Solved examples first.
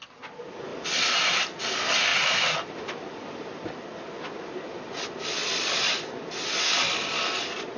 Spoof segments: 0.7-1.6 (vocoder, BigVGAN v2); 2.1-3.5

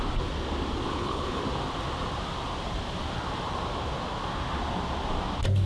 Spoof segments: 0.9-1.4 (codec, HILCodec)

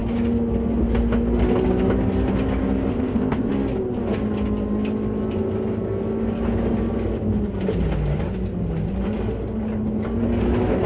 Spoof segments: 2.9-3.5 (codec, ZipCodec)

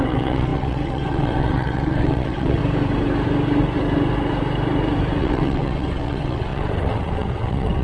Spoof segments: 0.0-2.6 (vocoder, WaveNeXt); 5.2-7.8

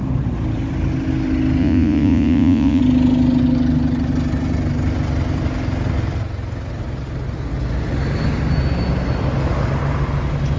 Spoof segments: 1.6-2.8 (vocoder, Vocos)

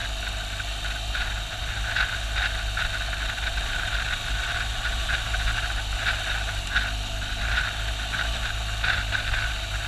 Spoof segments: none

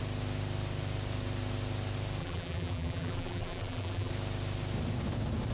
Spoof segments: 2.2-4.1 (vocoder, BigVGAN v2)

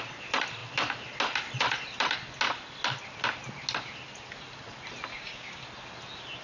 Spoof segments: 5.1-5.6 (codec, DAC)